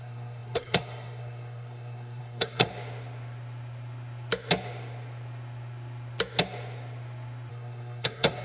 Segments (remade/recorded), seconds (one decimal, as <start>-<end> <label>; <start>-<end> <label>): 0.0-2.7 remade; 2.7-7.5 recorded; 7.5-8.4 remade